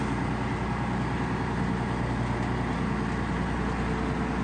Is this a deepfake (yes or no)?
no